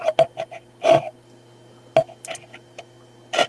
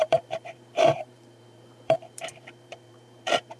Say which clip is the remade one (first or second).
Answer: second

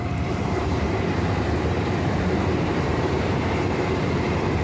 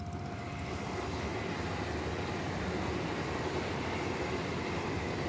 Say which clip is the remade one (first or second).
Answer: first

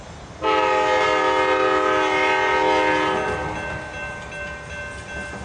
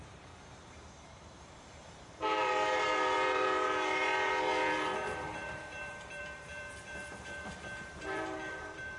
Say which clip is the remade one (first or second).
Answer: second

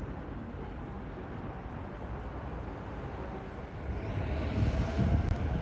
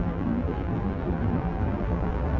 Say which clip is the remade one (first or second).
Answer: second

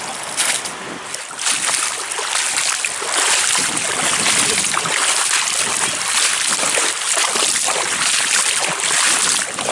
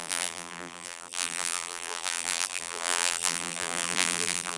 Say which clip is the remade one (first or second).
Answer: second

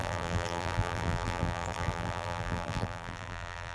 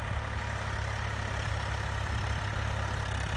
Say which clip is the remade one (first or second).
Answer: first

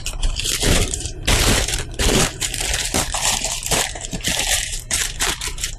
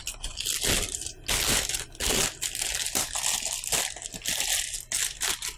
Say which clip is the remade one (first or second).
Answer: first